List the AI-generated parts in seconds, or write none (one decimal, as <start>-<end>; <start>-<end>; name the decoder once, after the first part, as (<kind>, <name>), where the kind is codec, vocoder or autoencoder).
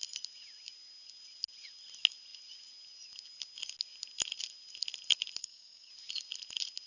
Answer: 5.4-5.9 (codec, DAC)